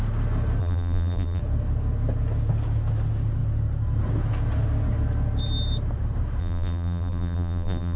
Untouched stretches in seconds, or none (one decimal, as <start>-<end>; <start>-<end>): 0.0-0.6; 1.4-6.4